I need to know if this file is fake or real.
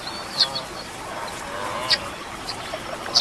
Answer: real